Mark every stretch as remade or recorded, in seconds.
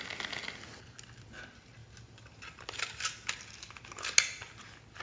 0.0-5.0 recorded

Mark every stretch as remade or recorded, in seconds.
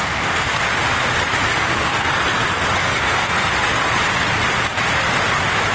0.0-0.6 remade; 0.6-1.5 recorded; 1.5-2.1 remade; 2.1-2.8 recorded; 2.8-3.5 remade; 3.5-5.7 recorded